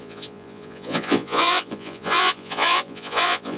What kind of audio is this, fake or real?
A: fake